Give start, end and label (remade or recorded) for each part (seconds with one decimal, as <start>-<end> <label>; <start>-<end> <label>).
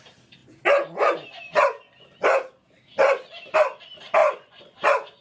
0.0-4.2 recorded; 4.2-5.2 remade